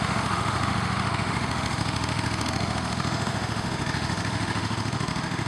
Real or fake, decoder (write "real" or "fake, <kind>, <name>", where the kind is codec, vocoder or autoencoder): fake, autoencoder, DAC-VAE